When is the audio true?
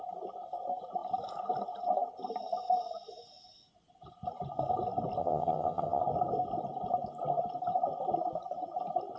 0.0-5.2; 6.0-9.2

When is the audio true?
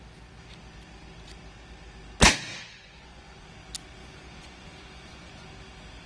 0.0-2.5; 3.5-4.0; 5.5-6.1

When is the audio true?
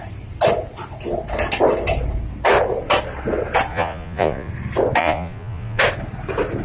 0.0-3.7; 4.5-5.0; 5.8-6.6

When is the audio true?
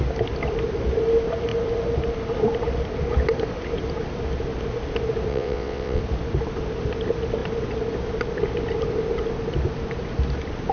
0.0-5.3; 6.0-10.7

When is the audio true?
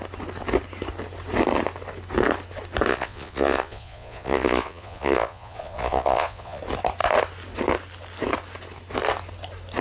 0.0-2.9; 6.6-9.8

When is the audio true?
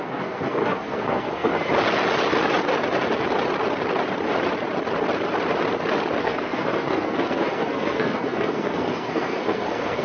1.5-6.2